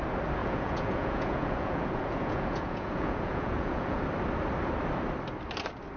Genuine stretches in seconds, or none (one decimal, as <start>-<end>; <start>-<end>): 0.0-0.4; 4.0-6.0